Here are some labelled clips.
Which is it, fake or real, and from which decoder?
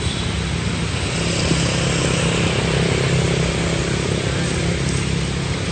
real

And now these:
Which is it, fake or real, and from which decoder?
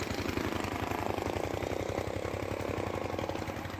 real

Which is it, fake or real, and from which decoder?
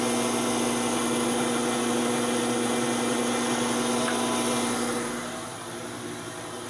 real